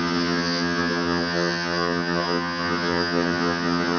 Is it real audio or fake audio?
fake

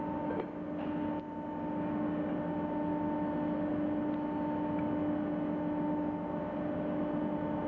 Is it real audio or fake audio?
real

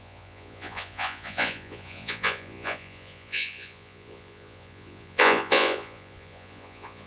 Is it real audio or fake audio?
fake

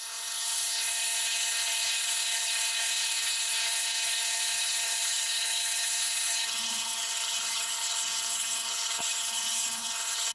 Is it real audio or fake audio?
fake